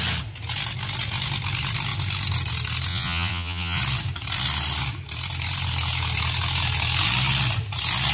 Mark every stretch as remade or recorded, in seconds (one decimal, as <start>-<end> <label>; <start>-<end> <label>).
0.0-2.9 recorded; 2.9-3.8 remade; 3.8-8.1 recorded